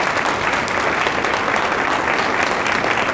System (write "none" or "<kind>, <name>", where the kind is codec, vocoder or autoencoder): none